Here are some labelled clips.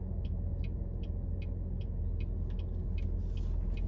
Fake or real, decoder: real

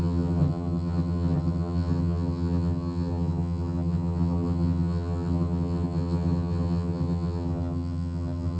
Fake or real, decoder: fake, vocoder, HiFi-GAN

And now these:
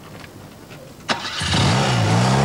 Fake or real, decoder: real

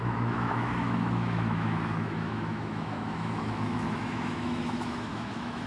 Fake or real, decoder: fake, autoencoder, DAC-VAE